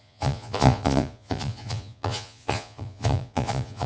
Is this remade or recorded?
remade